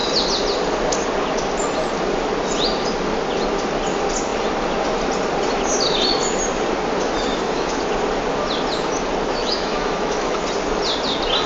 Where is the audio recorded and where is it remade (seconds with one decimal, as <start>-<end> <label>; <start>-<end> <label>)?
0.0-7.3 recorded; 7.3-7.8 remade; 7.8-9.4 recorded; 9.4-10.4 remade; 10.4-11.5 recorded